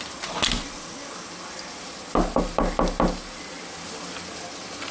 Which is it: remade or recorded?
recorded